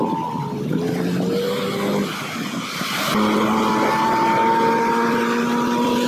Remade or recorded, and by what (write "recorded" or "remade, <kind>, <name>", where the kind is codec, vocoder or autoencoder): recorded